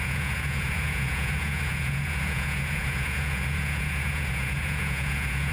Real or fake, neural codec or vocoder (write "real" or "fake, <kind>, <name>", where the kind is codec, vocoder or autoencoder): fake, vocoder, Vocos